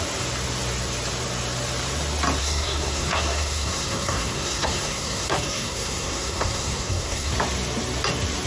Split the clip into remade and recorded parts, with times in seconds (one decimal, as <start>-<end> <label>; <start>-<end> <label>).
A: 0.0-2.4 recorded; 2.4-7.3 remade; 7.3-8.5 recorded